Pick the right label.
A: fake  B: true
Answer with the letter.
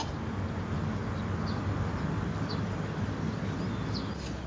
B